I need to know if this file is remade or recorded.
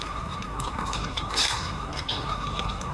remade